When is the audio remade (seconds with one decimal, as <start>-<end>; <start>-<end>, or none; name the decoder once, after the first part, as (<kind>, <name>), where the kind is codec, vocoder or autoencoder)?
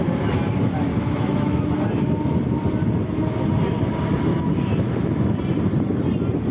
0.9-1.6 (autoencoder, DAC-VAE); 3.0-3.6; 4.3-5.4